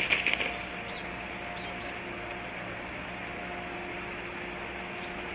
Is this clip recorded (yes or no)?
yes